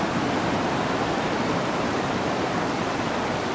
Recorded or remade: recorded